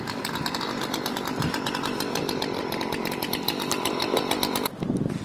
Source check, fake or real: real